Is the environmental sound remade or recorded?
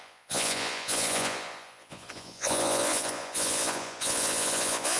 remade